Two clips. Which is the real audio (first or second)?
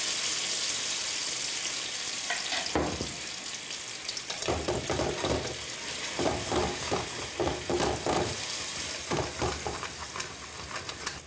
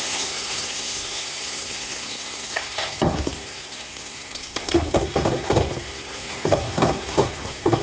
first